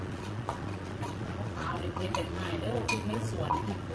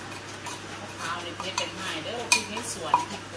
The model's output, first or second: first